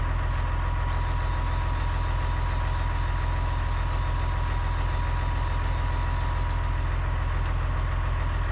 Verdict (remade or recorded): recorded